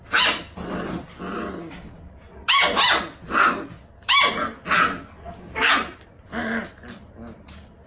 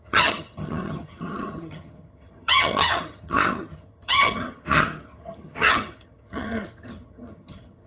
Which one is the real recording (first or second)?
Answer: first